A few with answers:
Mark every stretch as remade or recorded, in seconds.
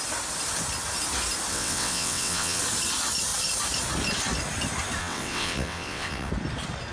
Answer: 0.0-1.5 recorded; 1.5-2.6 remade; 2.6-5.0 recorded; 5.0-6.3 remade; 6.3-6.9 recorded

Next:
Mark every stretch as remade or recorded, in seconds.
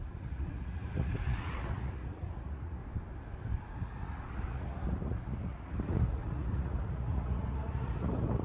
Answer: 0.0-2.8 remade; 2.8-3.7 recorded; 3.7-8.4 remade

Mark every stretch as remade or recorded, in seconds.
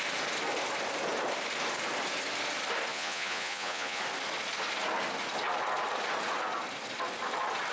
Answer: 0.0-2.9 recorded; 2.9-4.0 remade; 4.0-7.7 recorded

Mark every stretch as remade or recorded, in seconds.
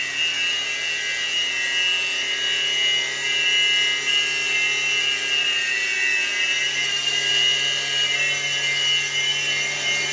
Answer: 0.0-10.1 recorded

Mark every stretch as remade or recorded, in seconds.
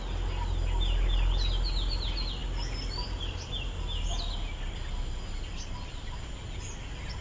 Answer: 0.0-7.2 recorded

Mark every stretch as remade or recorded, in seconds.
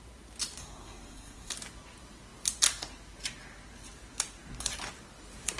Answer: 0.0-0.6 recorded; 0.6-1.5 remade; 1.5-5.6 recorded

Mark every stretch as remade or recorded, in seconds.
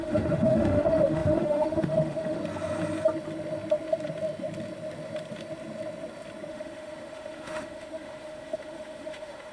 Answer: 0.0-2.4 remade; 2.4-6.5 recorded; 6.5-9.5 remade